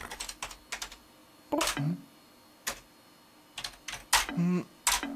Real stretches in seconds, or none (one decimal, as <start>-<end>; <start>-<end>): 0.0-5.2

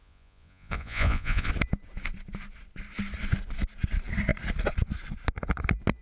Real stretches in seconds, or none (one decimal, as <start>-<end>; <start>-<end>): 1.5-6.0

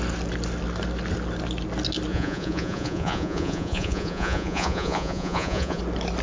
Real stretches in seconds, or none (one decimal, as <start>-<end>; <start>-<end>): 0.0-2.1; 5.8-6.2

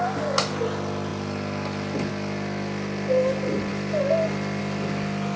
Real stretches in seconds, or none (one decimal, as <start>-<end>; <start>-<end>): 0.0-5.4